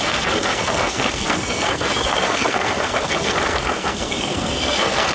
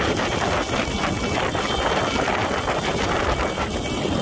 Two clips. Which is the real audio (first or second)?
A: second